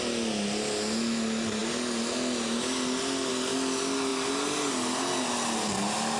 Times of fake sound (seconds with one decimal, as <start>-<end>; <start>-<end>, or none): none